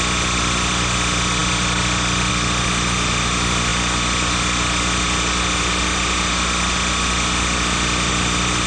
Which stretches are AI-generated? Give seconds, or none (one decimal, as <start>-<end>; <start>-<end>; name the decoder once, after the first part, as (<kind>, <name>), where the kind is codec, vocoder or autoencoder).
none